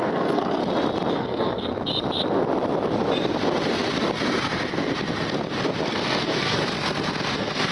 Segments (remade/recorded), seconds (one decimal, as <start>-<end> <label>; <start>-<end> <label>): 0.0-0.6 remade; 0.6-1.1 recorded; 1.1-1.7 remade; 1.7-5.9 recorded; 5.9-6.6 remade; 6.6-7.3 recorded; 7.3-7.7 remade